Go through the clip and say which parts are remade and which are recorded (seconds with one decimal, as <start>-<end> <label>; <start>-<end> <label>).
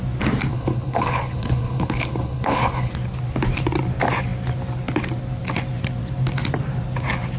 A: 0.0-0.5 recorded; 0.5-2.9 remade; 2.9-7.4 recorded